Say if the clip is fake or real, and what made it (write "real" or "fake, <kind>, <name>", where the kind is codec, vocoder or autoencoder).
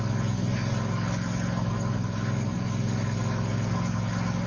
real